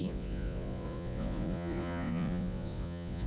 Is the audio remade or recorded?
remade